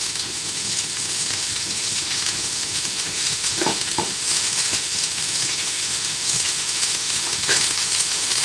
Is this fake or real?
fake